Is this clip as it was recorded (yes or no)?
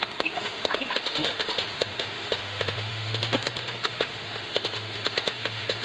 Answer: no